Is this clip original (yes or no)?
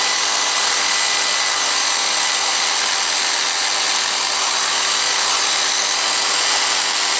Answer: yes